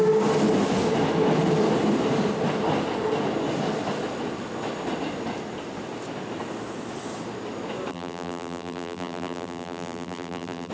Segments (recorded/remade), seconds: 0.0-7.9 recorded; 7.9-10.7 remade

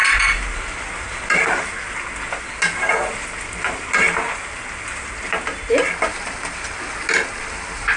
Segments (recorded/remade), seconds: 0.0-8.0 recorded

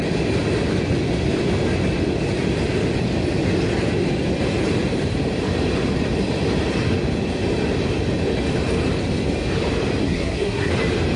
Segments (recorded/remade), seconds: 0.0-10.0 recorded; 10.0-10.7 remade; 10.7-11.2 recorded

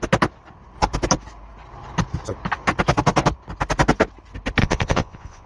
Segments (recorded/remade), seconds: 0.0-4.6 recorded; 4.6-5.5 remade

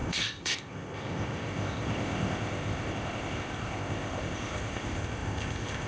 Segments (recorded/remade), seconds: 0.0-5.9 remade

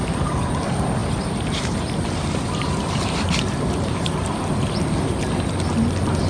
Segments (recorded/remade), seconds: 0.0-1.0 recorded; 1.0-4.8 remade; 4.8-6.3 recorded

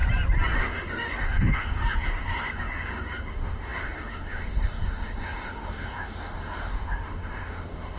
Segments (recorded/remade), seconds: 0.0-0.5 recorded; 0.5-8.0 remade

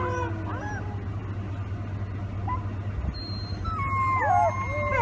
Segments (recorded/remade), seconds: 0.0-5.0 recorded